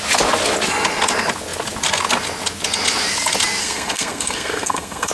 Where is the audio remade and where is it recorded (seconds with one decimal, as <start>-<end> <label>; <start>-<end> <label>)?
0.0-3.6 recorded; 3.6-5.1 remade